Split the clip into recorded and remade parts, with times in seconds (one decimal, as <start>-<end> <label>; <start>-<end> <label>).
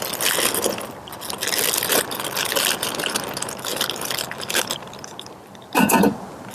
0.0-6.5 recorded